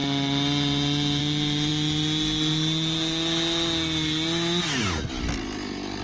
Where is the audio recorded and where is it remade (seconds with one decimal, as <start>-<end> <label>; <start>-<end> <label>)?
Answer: 0.0-6.0 recorded